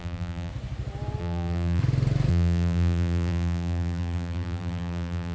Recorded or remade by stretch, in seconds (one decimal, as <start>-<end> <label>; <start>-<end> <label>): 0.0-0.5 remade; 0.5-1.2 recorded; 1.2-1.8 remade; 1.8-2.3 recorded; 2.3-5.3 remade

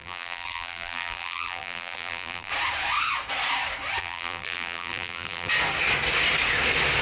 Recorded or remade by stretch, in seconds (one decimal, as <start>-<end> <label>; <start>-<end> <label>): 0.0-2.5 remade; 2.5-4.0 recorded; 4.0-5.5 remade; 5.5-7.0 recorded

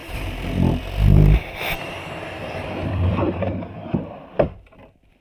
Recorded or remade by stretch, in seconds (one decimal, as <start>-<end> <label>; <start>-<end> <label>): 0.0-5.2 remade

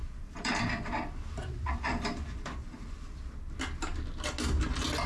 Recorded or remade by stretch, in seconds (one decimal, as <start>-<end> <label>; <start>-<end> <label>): 0.0-3.1 remade; 3.1-5.1 recorded

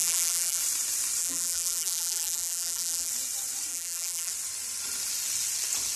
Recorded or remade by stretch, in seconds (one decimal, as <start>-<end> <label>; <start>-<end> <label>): 0.0-0.6 remade; 0.6-1.2 recorded; 1.2-3.1 remade; 3.1-3.7 recorded; 3.7-4.3 remade; 4.3-6.0 recorded

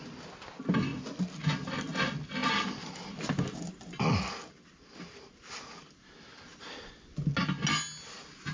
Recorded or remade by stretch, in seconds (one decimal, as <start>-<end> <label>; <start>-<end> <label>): 0.0-2.4 recorded; 2.4-6.9 remade; 6.9-8.5 recorded